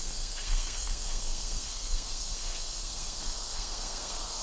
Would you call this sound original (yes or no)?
no